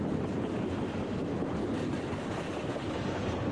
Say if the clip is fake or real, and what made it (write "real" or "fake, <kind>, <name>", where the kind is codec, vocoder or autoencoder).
real